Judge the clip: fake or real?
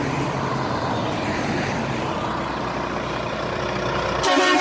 real